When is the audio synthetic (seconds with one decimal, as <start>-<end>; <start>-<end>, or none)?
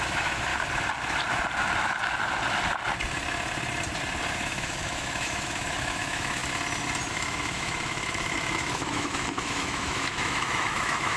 0.0-0.5; 4.3-6.4; 7.1-11.2